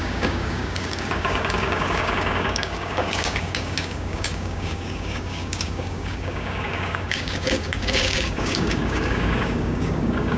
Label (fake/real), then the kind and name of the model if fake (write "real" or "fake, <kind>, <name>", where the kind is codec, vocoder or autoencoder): fake, codec, DAC